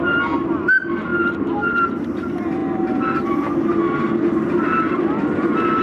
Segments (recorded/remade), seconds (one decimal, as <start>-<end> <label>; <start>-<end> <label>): 0.0-5.8 recorded